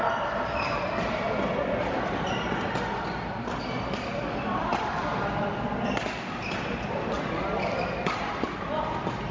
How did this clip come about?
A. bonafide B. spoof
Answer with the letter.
A